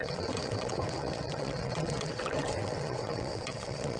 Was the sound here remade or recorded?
remade